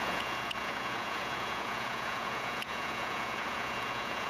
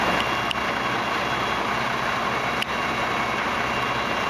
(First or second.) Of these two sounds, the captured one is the second